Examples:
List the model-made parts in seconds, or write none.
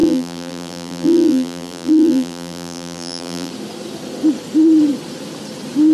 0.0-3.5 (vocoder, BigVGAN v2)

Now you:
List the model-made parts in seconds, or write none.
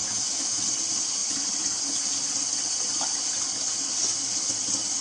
0.0-0.6 (autoencoder, DAC-VAE)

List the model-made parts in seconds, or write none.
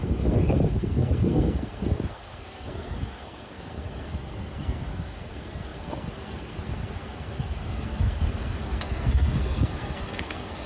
0.0-10.7 (codec, SNAC)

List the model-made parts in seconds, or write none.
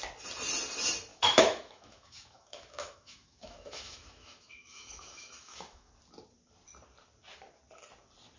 1.1-5.9 (autoencoder, DAC-VAE)